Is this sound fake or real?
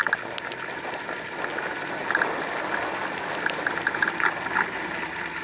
real